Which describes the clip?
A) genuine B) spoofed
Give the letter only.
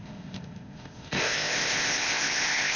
B